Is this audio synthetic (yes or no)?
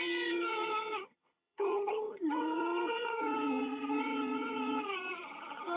yes